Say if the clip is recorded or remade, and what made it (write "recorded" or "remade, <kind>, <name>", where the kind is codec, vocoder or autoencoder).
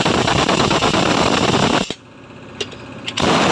recorded